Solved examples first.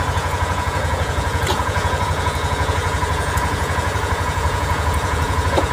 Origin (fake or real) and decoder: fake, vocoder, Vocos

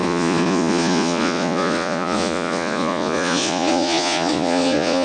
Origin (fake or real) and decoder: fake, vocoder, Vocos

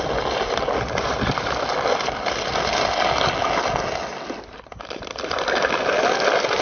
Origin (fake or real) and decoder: real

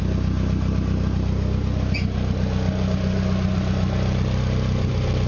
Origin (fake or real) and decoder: real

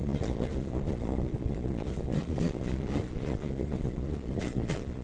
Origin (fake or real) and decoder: fake, vocoder, Vocos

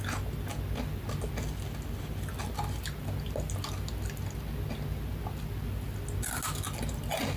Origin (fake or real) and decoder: real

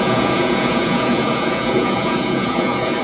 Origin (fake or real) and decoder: fake, vocoder, Vocos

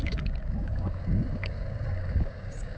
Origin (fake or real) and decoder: fake, codec, DAC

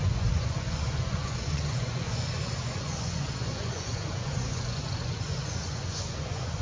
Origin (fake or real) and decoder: fake, vocoder, Vocos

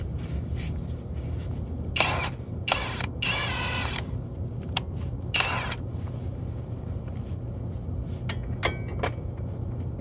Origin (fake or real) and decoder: real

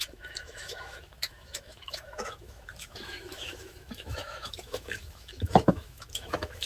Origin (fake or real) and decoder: fake, autoencoder, DAC-VAE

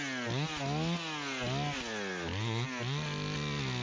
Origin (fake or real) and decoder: real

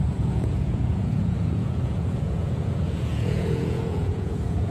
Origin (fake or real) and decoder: fake, vocoder, Vocos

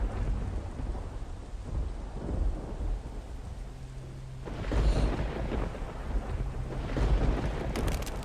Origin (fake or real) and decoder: real